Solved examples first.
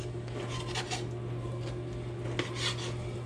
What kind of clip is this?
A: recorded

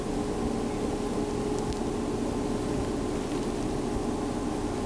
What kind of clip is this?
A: recorded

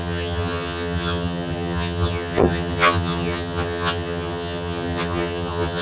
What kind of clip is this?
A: remade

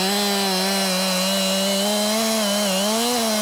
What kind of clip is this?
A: recorded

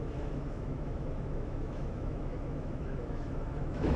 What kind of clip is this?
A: remade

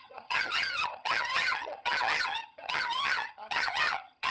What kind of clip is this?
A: remade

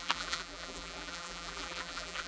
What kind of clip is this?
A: remade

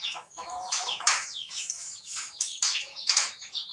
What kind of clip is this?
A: remade